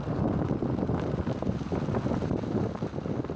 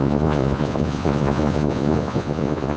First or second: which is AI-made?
second